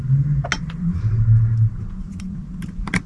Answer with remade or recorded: recorded